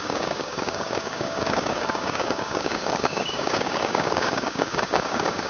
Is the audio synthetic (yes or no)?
yes